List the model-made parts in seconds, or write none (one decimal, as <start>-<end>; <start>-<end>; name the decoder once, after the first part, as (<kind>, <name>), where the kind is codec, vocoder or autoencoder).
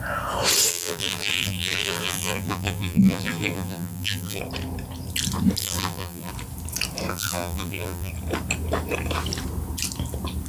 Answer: 0.7-4.4 (vocoder, BigVGAN v2); 5.6-6.3; 7.1-8.1